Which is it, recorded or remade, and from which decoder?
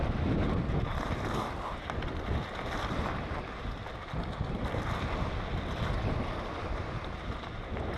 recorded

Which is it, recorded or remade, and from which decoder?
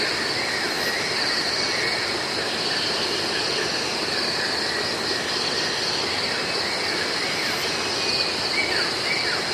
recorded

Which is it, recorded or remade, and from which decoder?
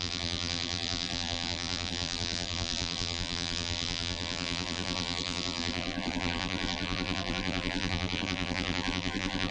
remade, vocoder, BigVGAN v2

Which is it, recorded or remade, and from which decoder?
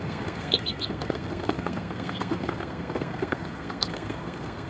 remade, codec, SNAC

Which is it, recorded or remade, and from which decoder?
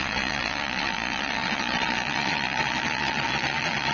remade, vocoder, Vocos